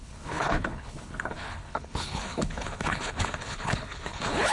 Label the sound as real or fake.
fake